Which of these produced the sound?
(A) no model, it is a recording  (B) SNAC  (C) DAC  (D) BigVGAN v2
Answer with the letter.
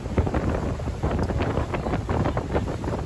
D